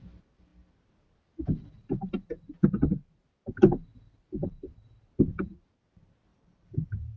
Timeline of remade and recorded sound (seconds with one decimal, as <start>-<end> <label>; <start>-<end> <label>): 0.0-6.3 recorded; 6.3-7.2 remade